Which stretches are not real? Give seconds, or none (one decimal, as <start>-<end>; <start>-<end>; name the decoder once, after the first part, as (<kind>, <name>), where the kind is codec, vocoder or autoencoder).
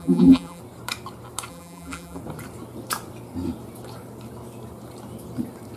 0.0-0.6 (vocoder, BigVGAN v2); 1.5-2.2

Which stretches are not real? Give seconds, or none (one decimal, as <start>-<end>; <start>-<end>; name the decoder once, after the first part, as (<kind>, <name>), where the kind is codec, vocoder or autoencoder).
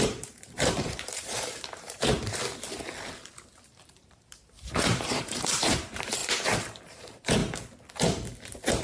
0.0-2.4 (vocoder, BigVGAN v2); 3.8-6.2; 6.9-7.4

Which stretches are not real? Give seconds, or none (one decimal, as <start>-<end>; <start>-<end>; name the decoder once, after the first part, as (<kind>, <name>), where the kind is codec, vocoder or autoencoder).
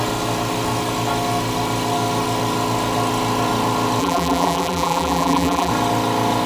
4.0-5.7 (vocoder, BigVGAN v2)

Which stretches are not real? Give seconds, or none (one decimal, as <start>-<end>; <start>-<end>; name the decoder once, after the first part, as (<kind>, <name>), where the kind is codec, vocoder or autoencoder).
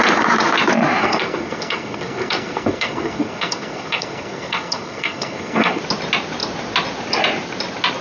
1.0-5.8 (codec, SNAC)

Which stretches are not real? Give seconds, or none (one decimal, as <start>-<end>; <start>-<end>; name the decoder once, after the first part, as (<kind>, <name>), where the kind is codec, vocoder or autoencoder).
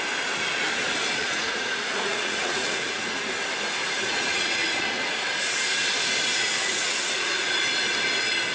1.2-3.3 (vocoder, Vocos); 3.8-5.2; 6.3-7.5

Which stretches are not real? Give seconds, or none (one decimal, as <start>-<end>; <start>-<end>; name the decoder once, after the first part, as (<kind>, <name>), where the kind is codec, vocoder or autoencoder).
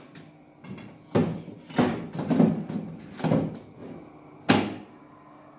none